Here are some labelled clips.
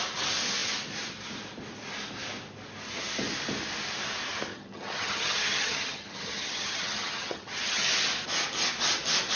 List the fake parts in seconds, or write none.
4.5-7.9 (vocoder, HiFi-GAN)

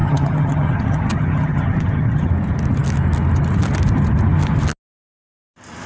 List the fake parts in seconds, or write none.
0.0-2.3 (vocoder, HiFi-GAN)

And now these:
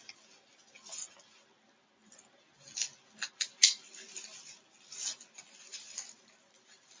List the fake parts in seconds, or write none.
none

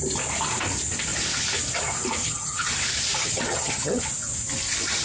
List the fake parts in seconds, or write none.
2.2-2.7 (vocoder, HiFi-GAN); 3.2-4.0

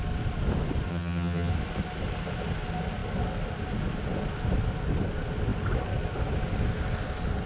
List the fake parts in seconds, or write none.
0.9-1.5 (vocoder, HiFi-GAN)